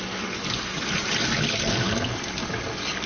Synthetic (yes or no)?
no